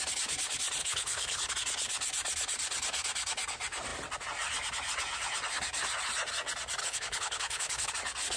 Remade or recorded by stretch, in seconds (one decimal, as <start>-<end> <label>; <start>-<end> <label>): 0.0-0.8 recorded; 0.8-1.5 remade; 1.5-6.8 recorded; 6.8-7.9 remade; 7.9-8.4 recorded